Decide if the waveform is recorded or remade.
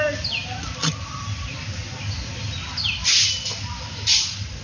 recorded